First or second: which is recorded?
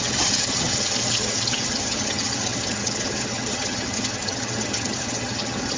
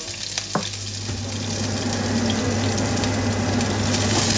second